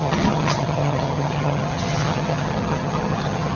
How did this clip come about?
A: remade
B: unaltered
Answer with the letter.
A